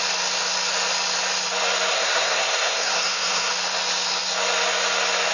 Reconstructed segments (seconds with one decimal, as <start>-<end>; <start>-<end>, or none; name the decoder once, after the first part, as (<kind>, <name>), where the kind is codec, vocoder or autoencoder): 1.9-3.5 (codec, SNAC)